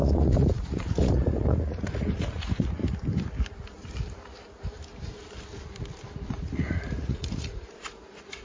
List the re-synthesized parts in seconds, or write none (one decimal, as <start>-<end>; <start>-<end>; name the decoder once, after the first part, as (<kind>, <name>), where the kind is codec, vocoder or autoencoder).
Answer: 0.0-2.8 (vocoder, Vocos); 6.3-8.4